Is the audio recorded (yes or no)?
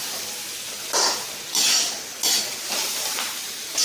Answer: yes